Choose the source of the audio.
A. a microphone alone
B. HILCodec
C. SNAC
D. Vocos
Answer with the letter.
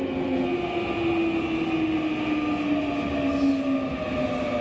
A